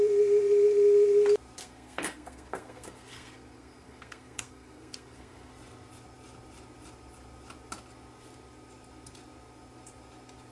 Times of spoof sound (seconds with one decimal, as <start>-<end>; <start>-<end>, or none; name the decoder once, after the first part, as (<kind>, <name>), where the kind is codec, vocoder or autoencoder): 1.6-5.5 (codec, SNAC)